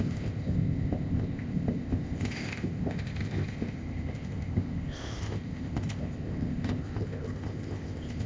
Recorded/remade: remade